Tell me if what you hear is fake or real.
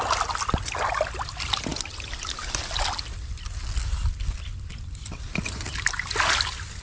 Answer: real